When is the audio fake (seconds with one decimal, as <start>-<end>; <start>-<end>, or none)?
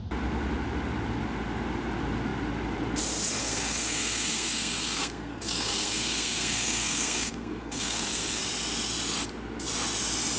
3.4-8.4